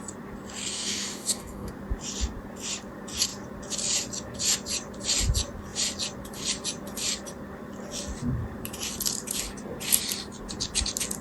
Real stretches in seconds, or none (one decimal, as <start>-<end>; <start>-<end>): 0.0-0.7; 1.7-11.2